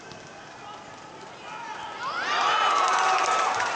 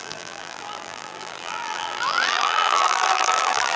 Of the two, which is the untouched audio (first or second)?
first